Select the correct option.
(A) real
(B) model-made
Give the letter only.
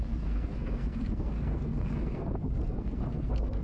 B